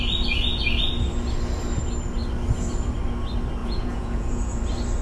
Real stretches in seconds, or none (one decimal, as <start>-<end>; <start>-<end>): 0.0-3.6; 4.6-5.0